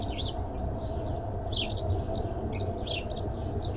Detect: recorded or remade recorded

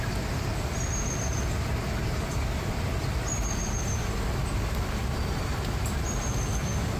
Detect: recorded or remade recorded